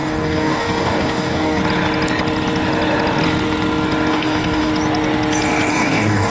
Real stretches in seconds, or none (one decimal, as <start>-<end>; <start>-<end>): 1.6-4.1; 4.7-5.7